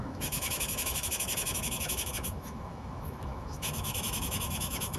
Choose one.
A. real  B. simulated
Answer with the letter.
B